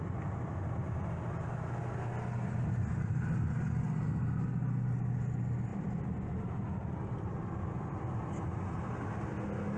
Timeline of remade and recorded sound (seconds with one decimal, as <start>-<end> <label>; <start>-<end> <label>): 0.0-9.8 recorded